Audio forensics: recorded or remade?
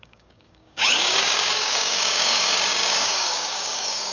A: remade